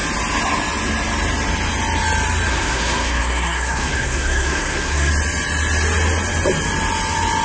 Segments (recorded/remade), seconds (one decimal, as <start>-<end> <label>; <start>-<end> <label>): 0.0-2.5 recorded; 2.5-5.1 remade; 5.1-7.4 recorded